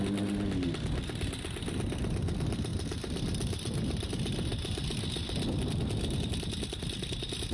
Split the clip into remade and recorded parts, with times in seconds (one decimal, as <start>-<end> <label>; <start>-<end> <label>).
0.0-7.5 recorded